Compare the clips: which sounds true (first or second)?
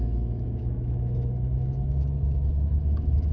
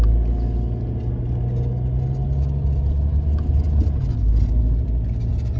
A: second